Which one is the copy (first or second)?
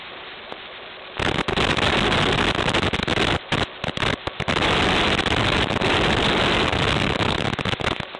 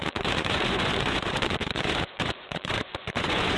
second